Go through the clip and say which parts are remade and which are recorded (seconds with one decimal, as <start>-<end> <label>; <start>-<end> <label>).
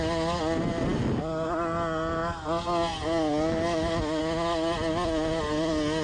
0.0-6.0 recorded